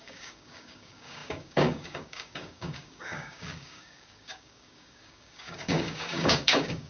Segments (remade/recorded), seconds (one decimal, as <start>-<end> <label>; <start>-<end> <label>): 0.0-6.9 remade

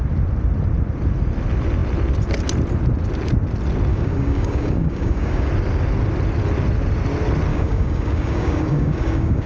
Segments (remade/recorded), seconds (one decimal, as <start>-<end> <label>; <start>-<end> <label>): 0.0-3.9 recorded; 3.9-5.5 remade; 5.5-7.5 recorded; 7.5-9.5 remade